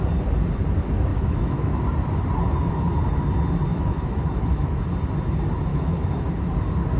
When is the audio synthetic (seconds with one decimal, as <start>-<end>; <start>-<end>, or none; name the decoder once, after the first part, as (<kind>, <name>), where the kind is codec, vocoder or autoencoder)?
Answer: 1.1-1.8 (autoencoder, DAC-VAE); 3.7-4.8; 5.7-6.3